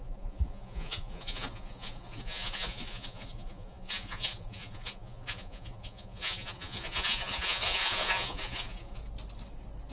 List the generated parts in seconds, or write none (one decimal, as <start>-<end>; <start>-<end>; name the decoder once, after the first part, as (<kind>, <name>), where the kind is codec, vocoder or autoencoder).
0.0-9.0 (vocoder, Vocos)